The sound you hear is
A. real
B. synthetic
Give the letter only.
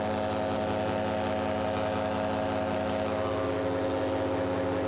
A